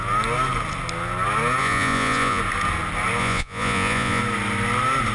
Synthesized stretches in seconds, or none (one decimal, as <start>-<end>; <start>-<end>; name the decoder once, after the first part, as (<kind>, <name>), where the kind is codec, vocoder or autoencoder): 1.6-2.4 (vocoder, Vocos); 3.2-4.2